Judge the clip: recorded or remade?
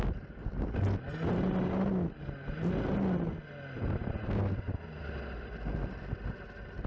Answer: recorded